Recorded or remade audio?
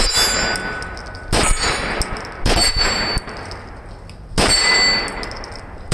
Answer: recorded